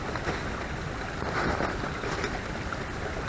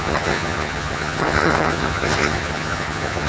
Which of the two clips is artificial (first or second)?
second